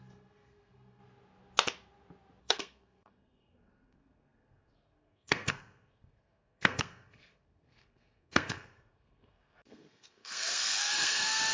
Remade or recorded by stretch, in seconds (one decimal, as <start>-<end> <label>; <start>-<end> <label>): 0.0-1.0 remade; 1.0-2.4 recorded; 2.4-11.5 remade

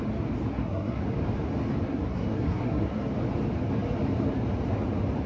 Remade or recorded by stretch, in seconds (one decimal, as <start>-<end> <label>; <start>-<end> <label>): 0.0-0.5 recorded; 0.5-1.0 remade; 1.0-1.9 recorded; 1.9-3.1 remade; 3.1-5.3 recorded

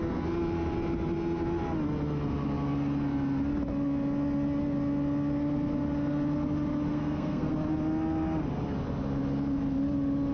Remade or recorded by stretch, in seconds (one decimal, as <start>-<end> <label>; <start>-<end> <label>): 0.0-6.9 recorded; 6.9-7.5 remade; 7.5-10.3 recorded